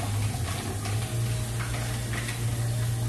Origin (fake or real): real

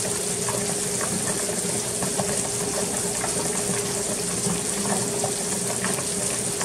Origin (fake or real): real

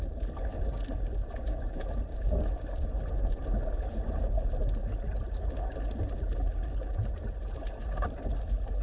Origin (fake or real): real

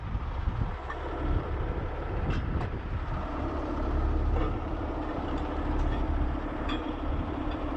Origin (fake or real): fake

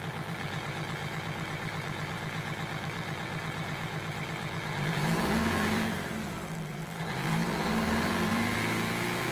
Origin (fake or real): fake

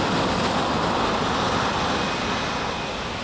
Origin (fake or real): real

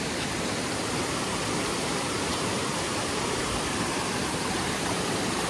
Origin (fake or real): fake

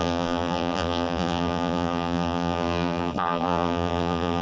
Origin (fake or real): fake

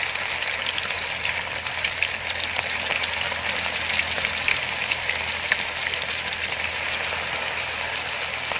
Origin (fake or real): fake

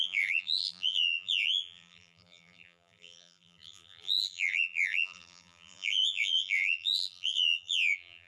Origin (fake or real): fake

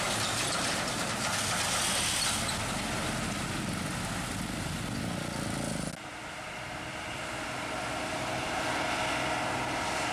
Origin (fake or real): real